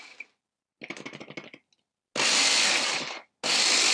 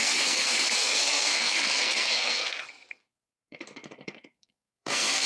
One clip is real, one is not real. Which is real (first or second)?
first